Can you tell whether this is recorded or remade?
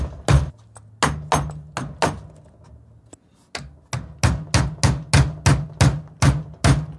recorded